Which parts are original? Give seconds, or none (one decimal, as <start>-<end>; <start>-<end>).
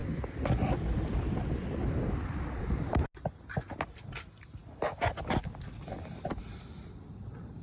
0.0-7.6